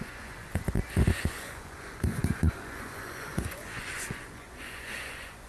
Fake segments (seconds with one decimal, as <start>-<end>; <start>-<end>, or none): 0.0-5.5